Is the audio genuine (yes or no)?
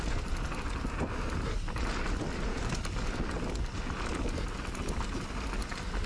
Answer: yes